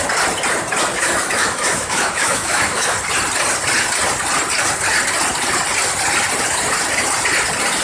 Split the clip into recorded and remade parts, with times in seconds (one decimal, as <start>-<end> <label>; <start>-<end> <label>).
0.0-0.9 recorded; 0.9-3.0 remade; 3.0-7.8 recorded